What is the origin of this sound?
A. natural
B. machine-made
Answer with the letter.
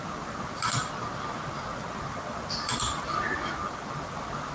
B